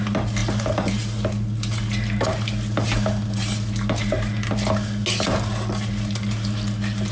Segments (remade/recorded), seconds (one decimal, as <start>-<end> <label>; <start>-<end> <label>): 0.0-7.1 recorded